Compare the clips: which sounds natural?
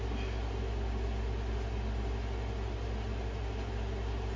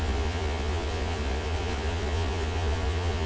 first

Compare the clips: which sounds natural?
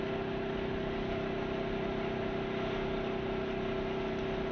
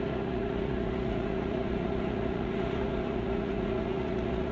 first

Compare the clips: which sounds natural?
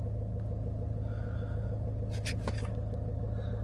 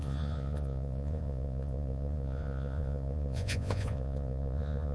first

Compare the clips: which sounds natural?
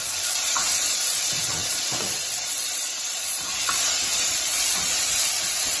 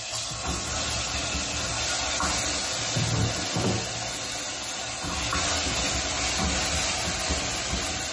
second